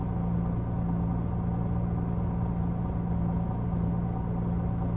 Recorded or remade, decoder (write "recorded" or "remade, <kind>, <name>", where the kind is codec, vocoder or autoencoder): recorded